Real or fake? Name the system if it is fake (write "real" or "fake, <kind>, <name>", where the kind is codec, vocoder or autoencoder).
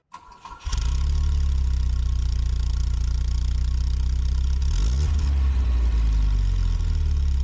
real